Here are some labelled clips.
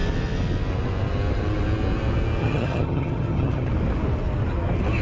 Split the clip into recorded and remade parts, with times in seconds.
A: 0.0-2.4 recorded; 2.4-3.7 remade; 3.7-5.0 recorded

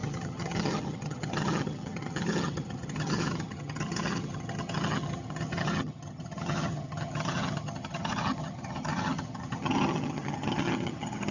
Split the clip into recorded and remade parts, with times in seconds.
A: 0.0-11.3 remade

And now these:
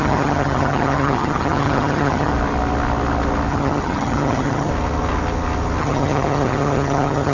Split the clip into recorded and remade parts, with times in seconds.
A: 0.0-2.3 remade; 2.3-3.5 recorded; 3.5-4.7 remade; 4.7-5.8 recorded; 5.8-7.3 remade

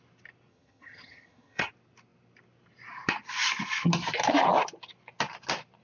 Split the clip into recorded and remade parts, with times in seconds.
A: 0.0-0.5 recorded; 0.5-1.7 remade; 1.7-5.8 recorded